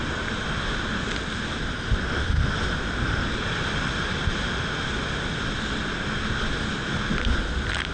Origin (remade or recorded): recorded